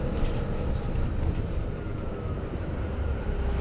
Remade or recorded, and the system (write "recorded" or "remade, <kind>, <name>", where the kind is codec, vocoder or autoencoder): recorded